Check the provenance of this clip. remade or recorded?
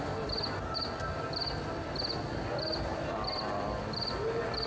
recorded